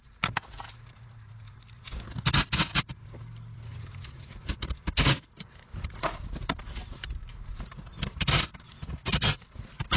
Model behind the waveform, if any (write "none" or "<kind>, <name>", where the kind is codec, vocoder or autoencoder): none